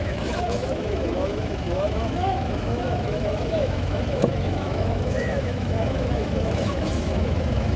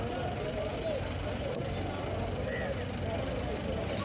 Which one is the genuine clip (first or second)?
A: second